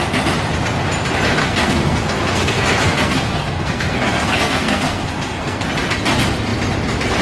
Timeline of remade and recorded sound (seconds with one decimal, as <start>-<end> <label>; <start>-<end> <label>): 0.0-1.4 recorded; 1.4-5.7 remade; 5.7-7.2 recorded